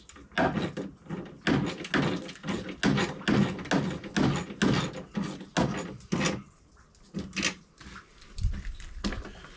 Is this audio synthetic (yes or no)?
no